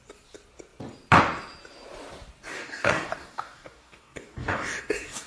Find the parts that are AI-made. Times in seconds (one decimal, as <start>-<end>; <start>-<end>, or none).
2.5-5.3